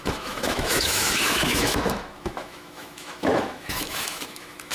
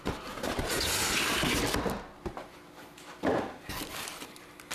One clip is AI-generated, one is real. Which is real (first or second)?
second